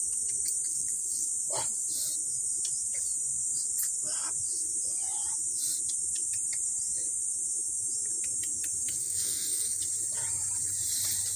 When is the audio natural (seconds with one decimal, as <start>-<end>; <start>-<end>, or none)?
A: 0.0-0.7; 1.3-9.0; 9.8-11.4